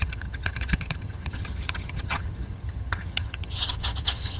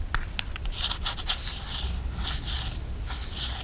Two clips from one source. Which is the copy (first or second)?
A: first